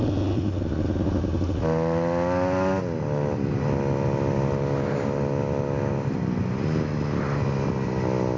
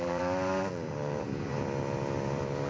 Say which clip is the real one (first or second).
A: first